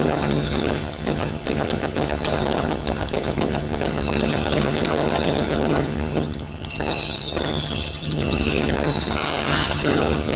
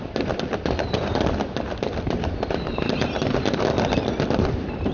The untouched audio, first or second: second